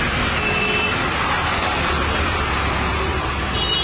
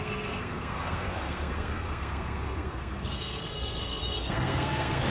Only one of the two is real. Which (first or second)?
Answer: first